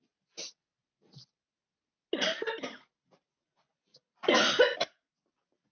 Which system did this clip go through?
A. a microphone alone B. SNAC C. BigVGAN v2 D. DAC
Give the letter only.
A